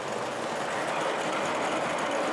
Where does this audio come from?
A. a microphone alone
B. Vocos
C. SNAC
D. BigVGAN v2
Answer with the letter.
A